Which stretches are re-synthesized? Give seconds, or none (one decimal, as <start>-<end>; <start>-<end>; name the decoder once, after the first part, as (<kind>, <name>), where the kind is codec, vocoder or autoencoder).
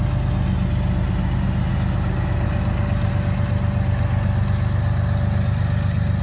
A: none